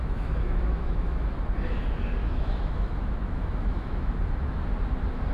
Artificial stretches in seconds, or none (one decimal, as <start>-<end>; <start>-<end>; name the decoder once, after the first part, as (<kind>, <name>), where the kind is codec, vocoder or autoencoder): 0.0-1.3 (autoencoder, DAC-VAE); 2.2-4.1